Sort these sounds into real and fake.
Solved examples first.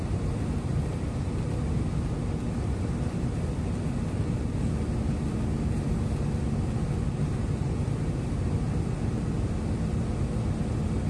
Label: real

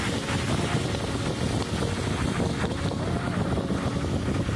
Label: real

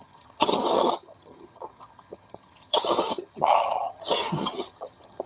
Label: fake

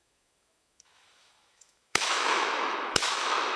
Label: fake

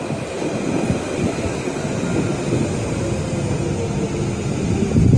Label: real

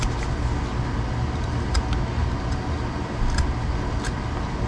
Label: real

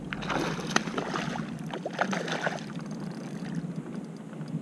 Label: real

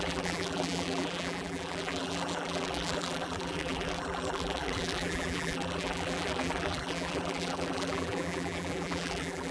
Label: fake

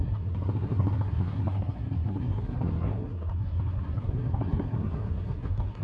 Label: fake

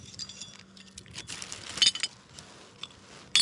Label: real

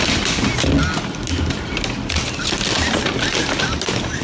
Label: real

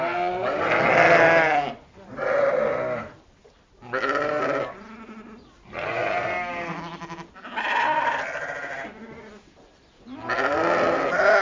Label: real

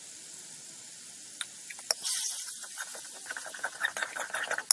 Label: real